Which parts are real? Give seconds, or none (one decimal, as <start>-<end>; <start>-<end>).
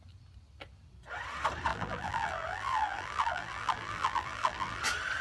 0.0-1.7; 4.8-5.2